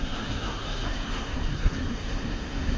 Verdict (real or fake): fake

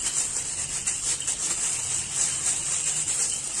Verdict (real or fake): real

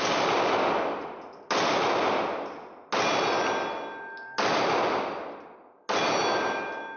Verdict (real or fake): real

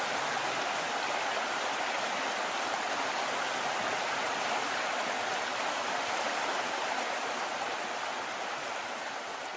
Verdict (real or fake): real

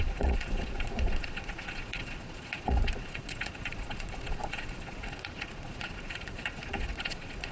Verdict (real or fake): fake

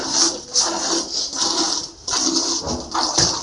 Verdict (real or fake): real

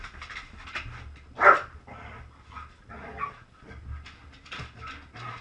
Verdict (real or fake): real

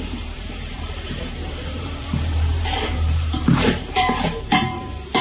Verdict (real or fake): fake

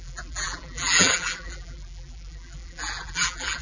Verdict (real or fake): fake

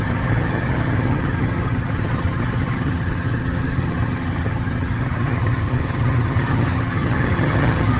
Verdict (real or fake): fake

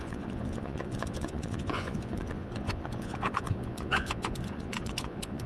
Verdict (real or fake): fake